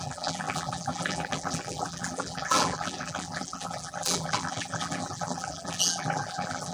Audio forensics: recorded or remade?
remade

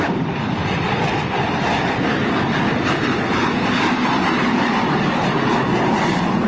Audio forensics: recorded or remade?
remade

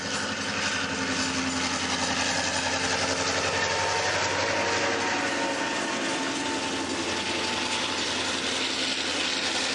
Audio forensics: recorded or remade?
recorded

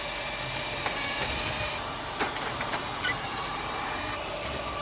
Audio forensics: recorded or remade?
remade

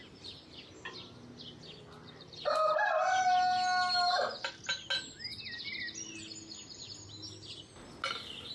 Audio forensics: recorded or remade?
recorded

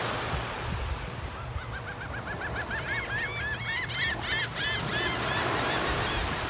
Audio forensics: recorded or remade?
remade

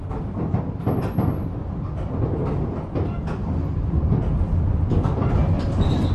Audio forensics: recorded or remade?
recorded